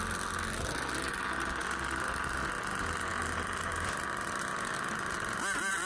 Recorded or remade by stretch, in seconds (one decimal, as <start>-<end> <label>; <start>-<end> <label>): 0.0-1.6 recorded; 1.6-2.6 remade; 2.6-3.1 recorded; 3.1-4.7 remade; 4.7-5.9 recorded